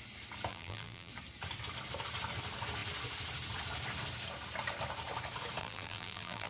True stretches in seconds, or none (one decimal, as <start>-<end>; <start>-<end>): 0.0-0.5; 1.1-5.6